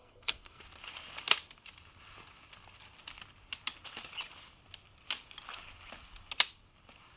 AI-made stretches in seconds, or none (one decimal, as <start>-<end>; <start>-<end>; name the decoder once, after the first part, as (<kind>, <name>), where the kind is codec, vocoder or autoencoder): 0.0-0.6 (codec, SNAC)

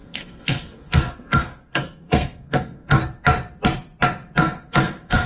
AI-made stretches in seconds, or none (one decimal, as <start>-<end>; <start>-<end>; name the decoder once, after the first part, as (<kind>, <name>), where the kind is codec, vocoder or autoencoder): 0.0-3.0 (codec, SNAC); 4.4-5.3

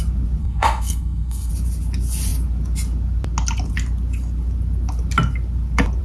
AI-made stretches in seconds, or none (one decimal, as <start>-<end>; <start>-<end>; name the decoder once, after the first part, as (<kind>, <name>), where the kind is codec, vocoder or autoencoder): 0.4-1.5 (codec, SNAC)

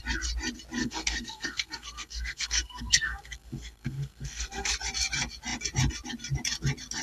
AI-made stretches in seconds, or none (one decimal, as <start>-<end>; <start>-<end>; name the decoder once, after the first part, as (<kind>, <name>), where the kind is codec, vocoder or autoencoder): 0.8-4.7 (codec, SNAC)

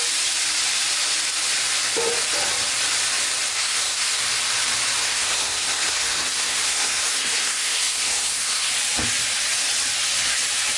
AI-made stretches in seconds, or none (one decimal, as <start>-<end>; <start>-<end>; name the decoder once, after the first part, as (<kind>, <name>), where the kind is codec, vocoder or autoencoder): 3.5-4.2 (codec, SNAC); 5.0-8.7